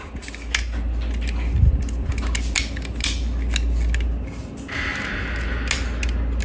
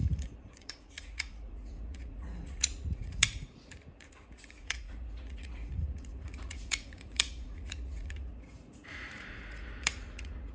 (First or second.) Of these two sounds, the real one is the first